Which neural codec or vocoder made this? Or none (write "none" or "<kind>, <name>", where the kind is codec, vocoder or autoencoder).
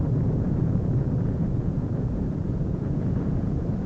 vocoder, Vocos